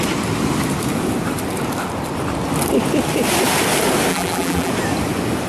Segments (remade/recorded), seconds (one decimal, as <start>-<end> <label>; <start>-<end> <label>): 0.0-4.1 recorded; 4.1-4.7 remade; 4.7-5.5 recorded